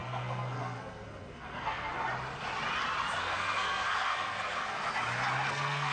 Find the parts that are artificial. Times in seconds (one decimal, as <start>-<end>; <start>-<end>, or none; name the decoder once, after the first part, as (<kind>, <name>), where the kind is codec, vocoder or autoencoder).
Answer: 0.0-1.9 (codec, SNAC); 3.2-4.8; 5.5-5.9

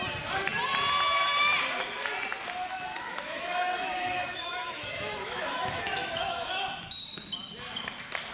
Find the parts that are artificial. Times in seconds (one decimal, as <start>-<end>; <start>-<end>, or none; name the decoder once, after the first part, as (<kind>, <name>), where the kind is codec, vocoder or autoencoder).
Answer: 2.9-6.8 (autoencoder, DAC-VAE)

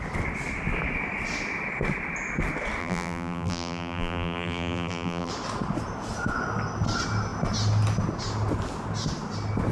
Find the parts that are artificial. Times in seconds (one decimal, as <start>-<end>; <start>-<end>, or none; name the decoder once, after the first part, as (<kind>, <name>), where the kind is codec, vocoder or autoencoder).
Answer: 2.8-5.3 (vocoder, BigVGAN v2)

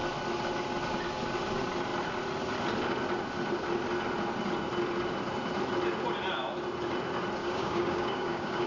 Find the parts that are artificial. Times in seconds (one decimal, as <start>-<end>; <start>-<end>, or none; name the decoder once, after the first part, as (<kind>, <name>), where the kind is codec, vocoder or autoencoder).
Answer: 7.4-8.7 (codec, DAC)

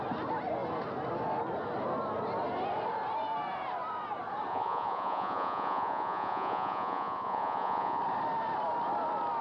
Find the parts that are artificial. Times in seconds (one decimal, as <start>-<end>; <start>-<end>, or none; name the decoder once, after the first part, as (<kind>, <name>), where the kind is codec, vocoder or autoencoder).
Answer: 4.5-8.0 (vocoder, Vocos)